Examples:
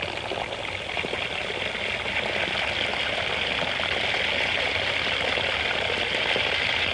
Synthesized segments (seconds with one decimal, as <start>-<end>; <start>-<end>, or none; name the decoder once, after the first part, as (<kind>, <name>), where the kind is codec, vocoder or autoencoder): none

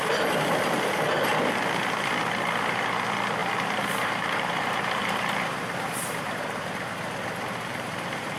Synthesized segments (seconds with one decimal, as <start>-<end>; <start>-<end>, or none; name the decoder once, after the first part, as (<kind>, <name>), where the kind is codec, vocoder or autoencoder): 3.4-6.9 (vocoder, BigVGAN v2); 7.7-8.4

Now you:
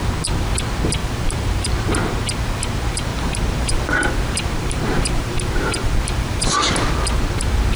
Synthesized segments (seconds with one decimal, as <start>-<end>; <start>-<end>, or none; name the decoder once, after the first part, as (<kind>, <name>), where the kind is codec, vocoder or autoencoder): 1.0-1.7 (vocoder, BigVGAN v2); 3.1-6.9

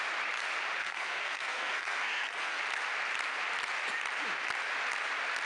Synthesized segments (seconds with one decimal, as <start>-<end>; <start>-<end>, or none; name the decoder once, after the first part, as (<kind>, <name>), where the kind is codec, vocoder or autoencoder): 0.8-2.6 (codec, SNAC)

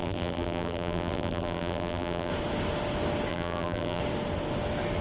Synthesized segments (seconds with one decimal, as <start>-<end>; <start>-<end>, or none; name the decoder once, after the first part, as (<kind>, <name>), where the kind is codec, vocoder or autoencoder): 0.0-2.3 (vocoder, BigVGAN v2); 3.3-4.0

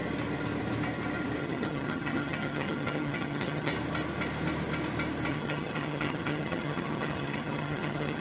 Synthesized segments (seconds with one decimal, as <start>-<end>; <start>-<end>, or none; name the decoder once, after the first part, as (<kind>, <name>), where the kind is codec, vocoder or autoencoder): 1.4-3.7 (vocoder, HiFi-GAN); 5.3-8.2

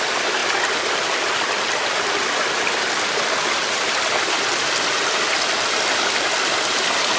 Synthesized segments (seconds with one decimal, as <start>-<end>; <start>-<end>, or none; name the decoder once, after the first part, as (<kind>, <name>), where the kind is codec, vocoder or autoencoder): 0.0-7.2 (vocoder, BigVGAN v2)